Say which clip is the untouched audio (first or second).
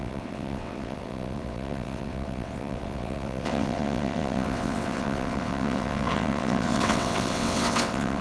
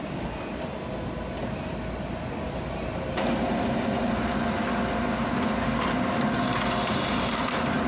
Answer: second